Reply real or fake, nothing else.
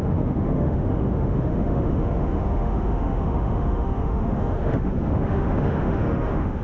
fake